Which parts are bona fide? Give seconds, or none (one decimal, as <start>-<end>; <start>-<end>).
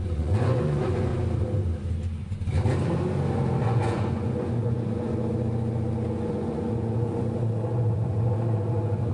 1.1-3.6; 5.1-6.3